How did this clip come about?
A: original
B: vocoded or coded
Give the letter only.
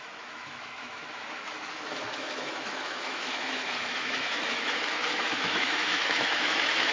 B